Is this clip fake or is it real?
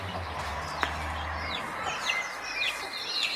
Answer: real